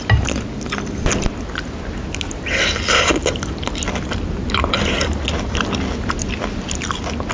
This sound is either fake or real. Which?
real